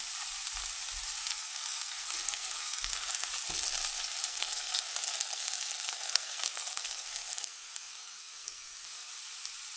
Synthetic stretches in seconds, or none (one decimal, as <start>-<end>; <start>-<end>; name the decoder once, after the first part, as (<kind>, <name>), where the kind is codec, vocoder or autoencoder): 1.2-3.3 (codec, SNAC); 4.2-9.1